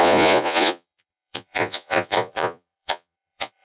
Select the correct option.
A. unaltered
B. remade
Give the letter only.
B